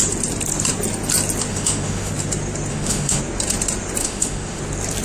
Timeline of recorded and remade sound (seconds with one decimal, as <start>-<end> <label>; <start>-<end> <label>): 0.0-1.5 recorded; 1.5-2.1 remade; 2.1-2.7 recorded; 2.7-3.2 remade; 3.2-4.0 recorded; 4.0-4.6 remade; 4.6-5.0 recorded